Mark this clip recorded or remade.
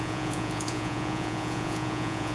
remade